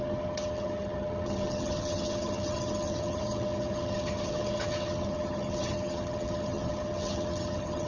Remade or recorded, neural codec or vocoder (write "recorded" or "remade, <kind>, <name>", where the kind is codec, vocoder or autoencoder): remade, vocoder, HiFi-GAN